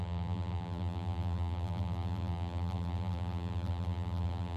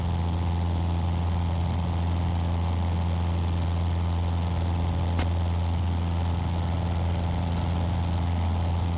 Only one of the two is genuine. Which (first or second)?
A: second